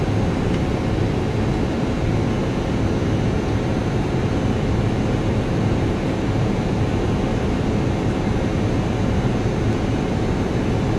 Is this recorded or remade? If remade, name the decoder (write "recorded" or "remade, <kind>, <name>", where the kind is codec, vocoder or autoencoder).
recorded